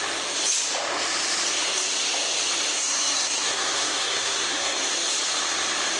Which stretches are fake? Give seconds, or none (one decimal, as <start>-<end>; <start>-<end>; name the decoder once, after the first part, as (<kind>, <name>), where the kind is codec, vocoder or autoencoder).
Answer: 2.7-4.9 (codec, SNAC)